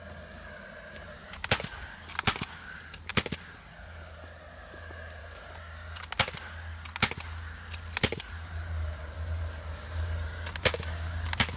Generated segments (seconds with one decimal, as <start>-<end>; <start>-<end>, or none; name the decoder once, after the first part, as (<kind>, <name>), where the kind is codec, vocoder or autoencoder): none